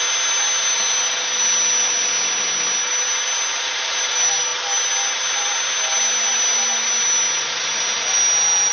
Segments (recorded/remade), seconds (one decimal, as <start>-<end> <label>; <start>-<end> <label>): 0.0-8.7 recorded